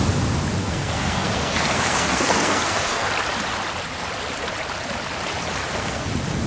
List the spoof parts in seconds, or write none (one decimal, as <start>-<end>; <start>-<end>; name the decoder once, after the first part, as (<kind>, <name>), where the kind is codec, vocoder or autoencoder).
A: 0.6-3.1 (codec, SNAC); 5.6-6.1

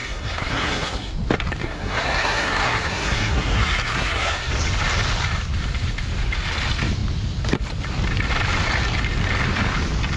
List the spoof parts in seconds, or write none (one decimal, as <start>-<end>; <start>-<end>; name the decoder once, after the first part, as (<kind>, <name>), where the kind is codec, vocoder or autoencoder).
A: 0.0-1.1 (codec, SNAC); 1.6-4.5

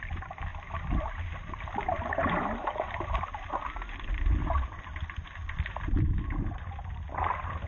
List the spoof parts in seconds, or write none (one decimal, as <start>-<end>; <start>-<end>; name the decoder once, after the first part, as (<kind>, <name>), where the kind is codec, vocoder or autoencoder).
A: none